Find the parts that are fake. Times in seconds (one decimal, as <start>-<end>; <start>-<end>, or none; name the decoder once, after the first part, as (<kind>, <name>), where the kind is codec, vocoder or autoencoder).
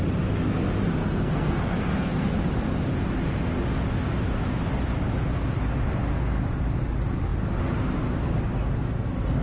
1.0-2.3 (codec, SNAC)